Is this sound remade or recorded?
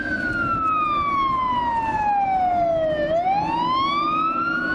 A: recorded